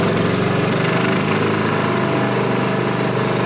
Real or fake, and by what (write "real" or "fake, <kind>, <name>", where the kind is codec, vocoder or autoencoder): real